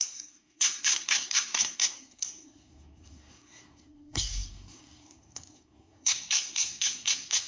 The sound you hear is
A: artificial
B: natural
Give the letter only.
A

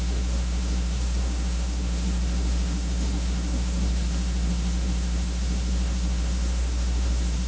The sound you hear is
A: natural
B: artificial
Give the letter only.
B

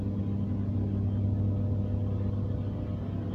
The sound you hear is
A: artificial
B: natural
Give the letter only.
B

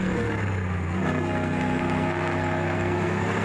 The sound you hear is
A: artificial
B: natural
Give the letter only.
A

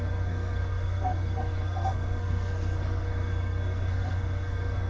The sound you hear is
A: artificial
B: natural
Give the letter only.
A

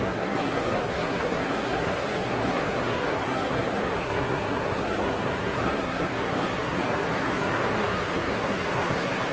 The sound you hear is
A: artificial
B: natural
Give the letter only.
A